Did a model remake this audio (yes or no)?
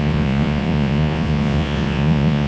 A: yes